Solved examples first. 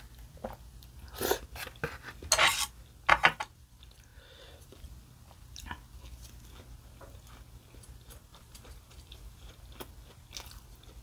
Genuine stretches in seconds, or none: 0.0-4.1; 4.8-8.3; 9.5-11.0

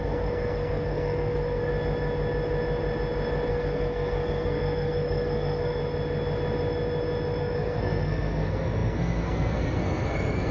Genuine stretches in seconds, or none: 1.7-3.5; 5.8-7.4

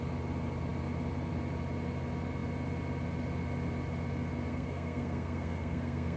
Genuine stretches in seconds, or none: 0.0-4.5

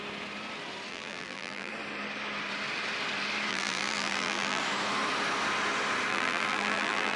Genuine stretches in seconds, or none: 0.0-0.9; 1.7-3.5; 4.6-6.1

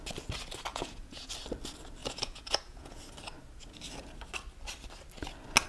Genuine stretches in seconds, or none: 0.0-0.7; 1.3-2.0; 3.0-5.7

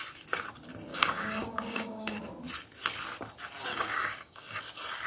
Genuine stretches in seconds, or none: 0.0-0.9; 2.2-3.7; 4.6-5.1

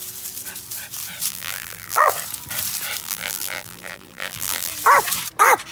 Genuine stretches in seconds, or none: 0.0-1.3; 2.1-3.0; 4.7-5.7